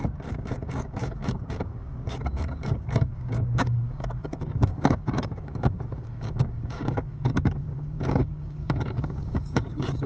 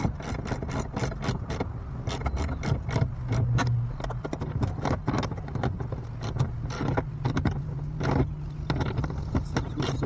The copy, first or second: first